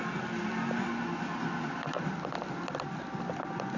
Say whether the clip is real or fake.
real